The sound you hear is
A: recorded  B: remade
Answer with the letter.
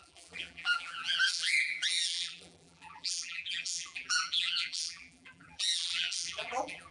B